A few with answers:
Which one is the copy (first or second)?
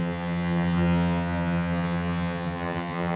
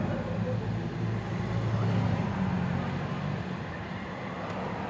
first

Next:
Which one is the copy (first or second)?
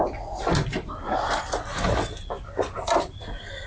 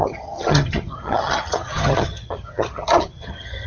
second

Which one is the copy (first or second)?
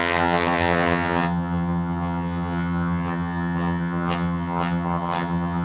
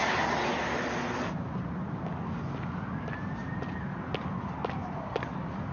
first